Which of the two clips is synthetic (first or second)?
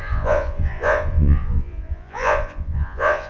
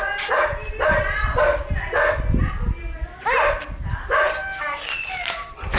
first